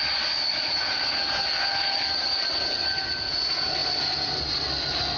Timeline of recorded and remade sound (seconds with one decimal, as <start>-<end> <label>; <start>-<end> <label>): 0.0-0.5 recorded; 0.5-1.0 remade; 1.0-1.7 recorded; 1.7-2.5 remade; 2.5-5.2 recorded

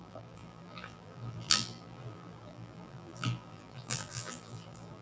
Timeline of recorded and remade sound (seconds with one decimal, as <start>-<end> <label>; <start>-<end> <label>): 0.0-5.0 remade

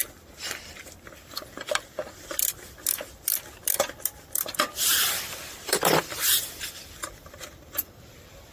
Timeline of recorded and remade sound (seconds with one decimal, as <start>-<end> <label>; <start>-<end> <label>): 0.0-8.5 remade